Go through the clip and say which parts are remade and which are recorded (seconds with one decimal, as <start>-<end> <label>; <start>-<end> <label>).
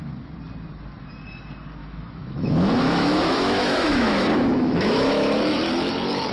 0.0-1.8 recorded; 1.8-5.6 remade; 5.6-6.3 recorded